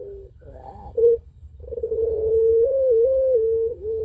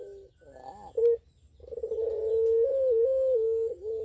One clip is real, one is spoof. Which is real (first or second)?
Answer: second